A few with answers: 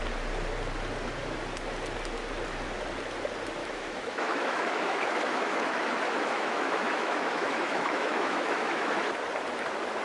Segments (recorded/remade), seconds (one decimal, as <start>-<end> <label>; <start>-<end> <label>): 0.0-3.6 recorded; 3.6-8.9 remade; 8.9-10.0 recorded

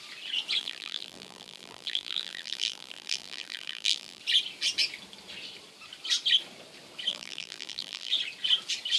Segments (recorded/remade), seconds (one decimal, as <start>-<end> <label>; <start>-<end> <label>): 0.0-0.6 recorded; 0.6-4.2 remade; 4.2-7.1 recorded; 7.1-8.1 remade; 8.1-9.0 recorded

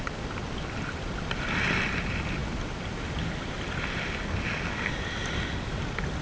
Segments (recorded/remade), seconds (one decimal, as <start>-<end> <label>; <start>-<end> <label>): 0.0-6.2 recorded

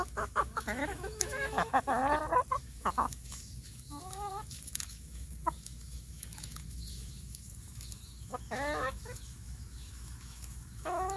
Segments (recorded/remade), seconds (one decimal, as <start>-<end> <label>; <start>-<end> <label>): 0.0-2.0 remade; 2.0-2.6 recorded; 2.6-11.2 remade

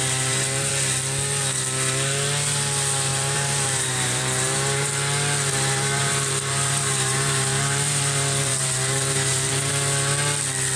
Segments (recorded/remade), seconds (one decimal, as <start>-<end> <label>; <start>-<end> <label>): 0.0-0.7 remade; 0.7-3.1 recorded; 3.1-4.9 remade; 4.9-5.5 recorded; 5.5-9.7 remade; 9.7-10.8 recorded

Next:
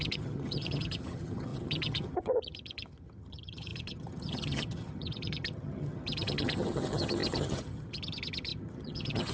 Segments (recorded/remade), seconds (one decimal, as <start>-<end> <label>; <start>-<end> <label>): 0.0-9.3 remade